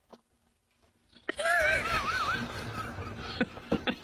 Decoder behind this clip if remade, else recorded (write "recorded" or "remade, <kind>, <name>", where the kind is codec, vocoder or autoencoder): recorded